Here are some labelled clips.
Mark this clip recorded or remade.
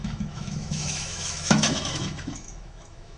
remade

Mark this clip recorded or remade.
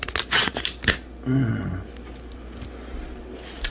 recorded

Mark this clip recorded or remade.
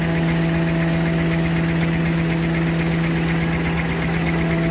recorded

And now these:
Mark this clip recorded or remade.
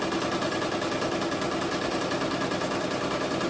recorded